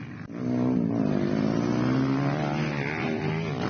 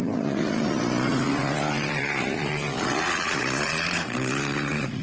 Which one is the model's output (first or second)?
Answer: second